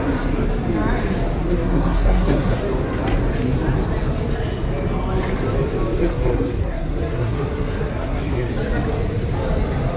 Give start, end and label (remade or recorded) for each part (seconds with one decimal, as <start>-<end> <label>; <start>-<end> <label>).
0.0-1.4 recorded; 1.4-2.6 remade; 2.6-6.0 recorded; 6.0-8.5 remade; 8.5-10.0 recorded